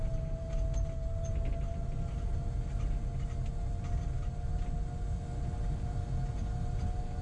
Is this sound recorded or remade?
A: recorded